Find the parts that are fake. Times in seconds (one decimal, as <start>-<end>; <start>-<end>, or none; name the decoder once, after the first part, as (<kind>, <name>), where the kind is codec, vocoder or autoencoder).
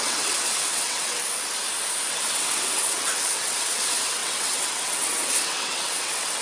0.0-1.2 (vocoder, WaveNeXt); 2.1-6.4